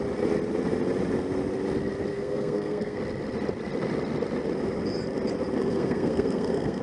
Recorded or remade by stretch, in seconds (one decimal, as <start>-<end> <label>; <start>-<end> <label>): 0.0-2.1 recorded; 2.1-3.0 remade; 3.0-5.7 recorded; 5.7-6.8 remade